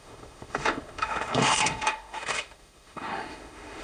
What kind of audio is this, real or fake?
fake